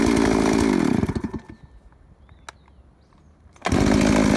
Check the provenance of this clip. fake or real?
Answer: real